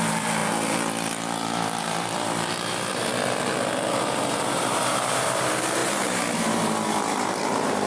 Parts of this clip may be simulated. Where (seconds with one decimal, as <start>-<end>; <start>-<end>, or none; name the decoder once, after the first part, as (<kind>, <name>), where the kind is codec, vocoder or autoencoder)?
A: 0.0-0.4 (vocoder, BigVGAN v2); 1.8-3.1; 3.9-7.9